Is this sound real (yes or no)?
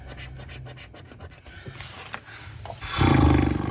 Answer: yes